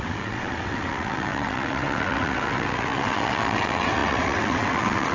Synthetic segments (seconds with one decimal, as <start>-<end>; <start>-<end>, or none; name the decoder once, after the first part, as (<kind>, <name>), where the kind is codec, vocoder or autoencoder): 0.0-5.1 (vocoder, WaveNeXt)